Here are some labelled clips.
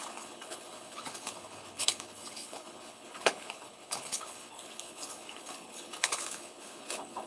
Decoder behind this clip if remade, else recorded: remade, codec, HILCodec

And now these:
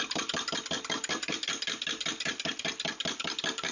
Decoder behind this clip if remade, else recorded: recorded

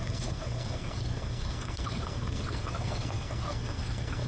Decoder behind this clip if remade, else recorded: remade, codec, SNAC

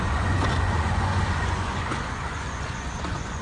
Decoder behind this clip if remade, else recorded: remade, vocoder, Vocos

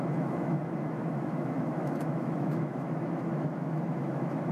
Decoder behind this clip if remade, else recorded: remade, autoencoder, DAC-VAE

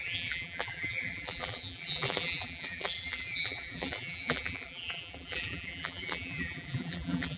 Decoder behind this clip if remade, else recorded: remade, vocoder, BigVGAN v2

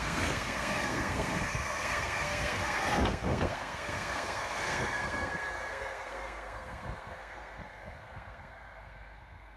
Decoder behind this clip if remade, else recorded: remade, codec, SNAC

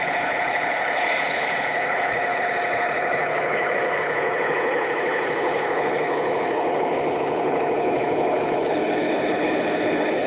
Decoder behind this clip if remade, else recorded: remade, codec, HILCodec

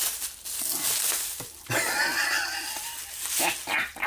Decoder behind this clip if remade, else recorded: recorded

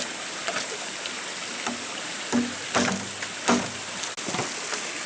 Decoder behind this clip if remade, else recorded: recorded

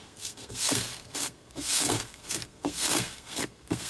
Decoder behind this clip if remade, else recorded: remade, codec, SNAC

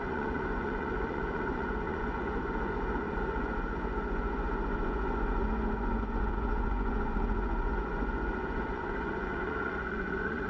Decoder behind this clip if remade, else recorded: remade, vocoder, Vocos